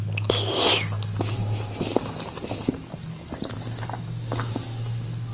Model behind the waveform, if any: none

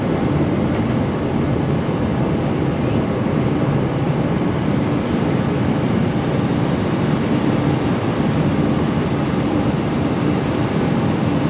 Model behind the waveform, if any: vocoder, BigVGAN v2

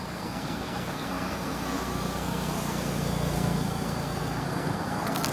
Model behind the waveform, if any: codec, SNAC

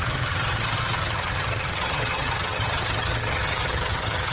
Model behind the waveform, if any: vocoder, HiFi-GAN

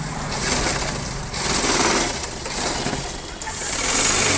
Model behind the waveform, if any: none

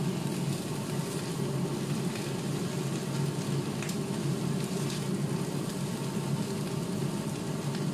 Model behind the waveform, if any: none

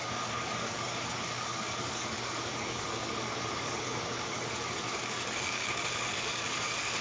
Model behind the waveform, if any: codec, DAC